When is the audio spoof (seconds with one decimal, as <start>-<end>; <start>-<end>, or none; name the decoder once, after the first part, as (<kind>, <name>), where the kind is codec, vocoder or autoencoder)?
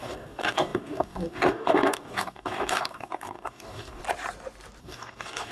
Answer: 0.0-4.0 (codec, DAC); 4.8-5.5